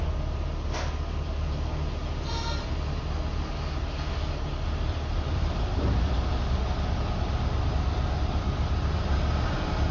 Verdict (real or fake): real